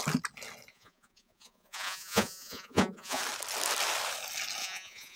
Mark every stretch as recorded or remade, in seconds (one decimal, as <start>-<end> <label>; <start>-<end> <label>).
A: 0.0-0.7 recorded; 0.7-3.2 remade; 3.2-4.6 recorded; 4.6-5.2 remade